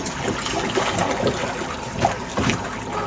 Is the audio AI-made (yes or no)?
no